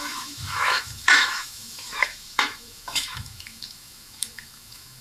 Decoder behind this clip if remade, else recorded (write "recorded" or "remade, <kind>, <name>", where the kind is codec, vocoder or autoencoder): remade, autoencoder, DAC-VAE